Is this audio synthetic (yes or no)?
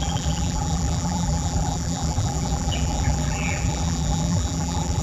yes